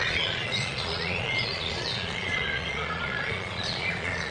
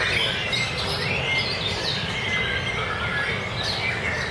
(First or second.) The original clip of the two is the second